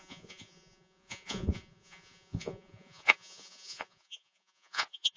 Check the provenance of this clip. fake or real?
fake